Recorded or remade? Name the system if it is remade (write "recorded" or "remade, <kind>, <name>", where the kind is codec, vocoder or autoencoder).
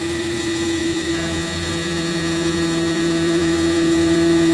remade, vocoder, Vocos